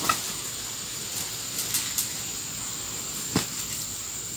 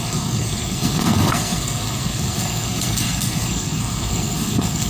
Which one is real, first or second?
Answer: first